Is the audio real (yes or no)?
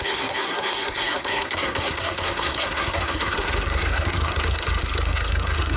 no